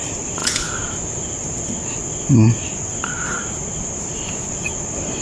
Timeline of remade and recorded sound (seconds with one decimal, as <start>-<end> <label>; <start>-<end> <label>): 0.0-5.2 recorded